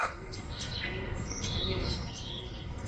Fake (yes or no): yes